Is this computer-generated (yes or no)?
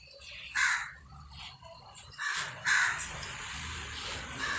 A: no